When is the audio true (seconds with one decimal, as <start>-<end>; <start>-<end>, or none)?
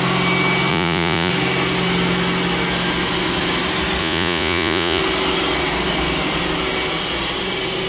0.0-0.7; 1.3-4.0; 5.0-7.9